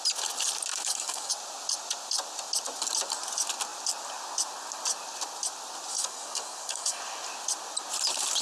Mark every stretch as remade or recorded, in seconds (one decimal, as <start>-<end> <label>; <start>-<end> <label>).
0.0-0.7 recorded; 0.7-1.3 remade; 1.3-5.9 recorded; 5.9-7.0 remade; 7.0-8.4 recorded

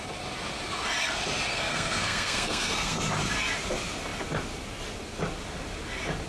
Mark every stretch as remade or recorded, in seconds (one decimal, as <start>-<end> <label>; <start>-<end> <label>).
0.0-1.5 recorded; 1.5-3.0 remade; 3.0-6.3 recorded

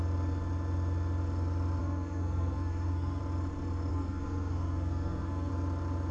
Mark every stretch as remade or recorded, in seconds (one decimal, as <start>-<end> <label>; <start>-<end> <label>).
0.0-1.8 recorded; 1.8-3.2 remade; 3.2-3.9 recorded; 3.9-5.5 remade; 5.5-6.1 recorded